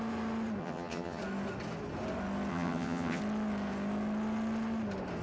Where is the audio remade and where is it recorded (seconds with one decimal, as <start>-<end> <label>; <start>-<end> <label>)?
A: 0.0-0.6 recorded; 0.6-1.2 remade; 1.2-2.5 recorded; 2.5-3.2 remade; 3.2-5.2 recorded